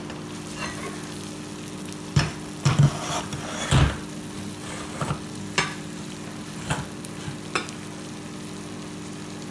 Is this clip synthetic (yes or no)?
no